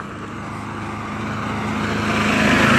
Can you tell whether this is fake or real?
real